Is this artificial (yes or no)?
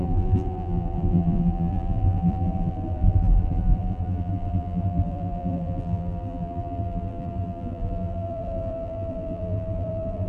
yes